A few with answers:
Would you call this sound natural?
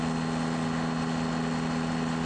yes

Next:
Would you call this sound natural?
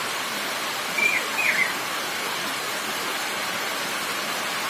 yes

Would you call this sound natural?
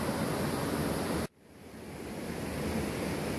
yes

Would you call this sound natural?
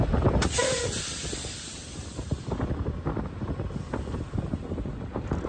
yes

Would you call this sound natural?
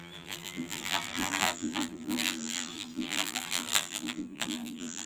no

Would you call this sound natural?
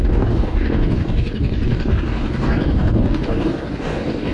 no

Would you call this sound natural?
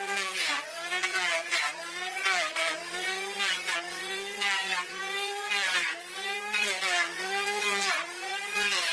no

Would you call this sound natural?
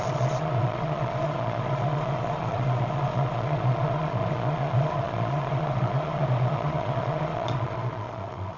no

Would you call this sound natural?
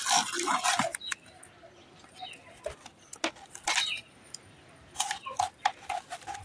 yes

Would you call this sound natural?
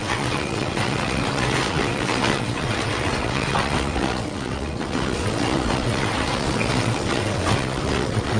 no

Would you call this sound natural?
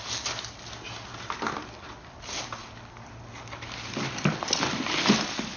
yes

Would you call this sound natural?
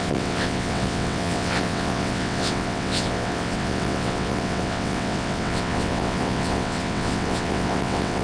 no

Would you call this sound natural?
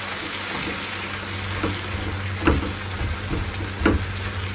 yes